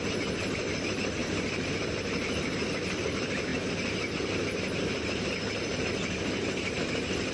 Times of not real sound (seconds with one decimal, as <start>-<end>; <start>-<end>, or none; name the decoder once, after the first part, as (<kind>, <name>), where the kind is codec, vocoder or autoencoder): 1.2-1.7 (vocoder, BigVGAN v2)